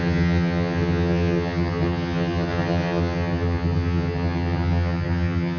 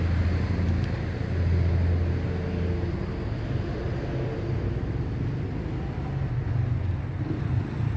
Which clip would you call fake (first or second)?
first